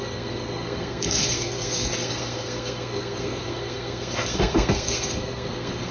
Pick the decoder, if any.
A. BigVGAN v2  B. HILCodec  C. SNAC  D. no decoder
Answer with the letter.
C